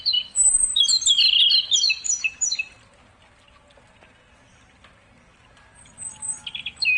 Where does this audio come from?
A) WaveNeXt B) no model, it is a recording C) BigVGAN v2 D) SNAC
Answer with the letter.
B